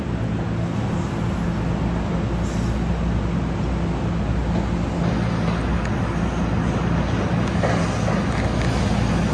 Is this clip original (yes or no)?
yes